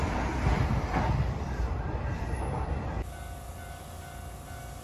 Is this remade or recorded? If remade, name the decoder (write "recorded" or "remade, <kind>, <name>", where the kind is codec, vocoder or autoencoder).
recorded